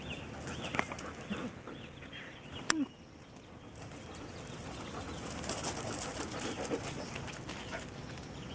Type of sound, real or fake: real